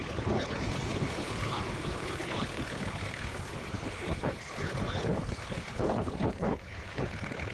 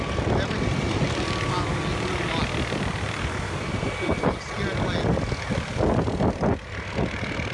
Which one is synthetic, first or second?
first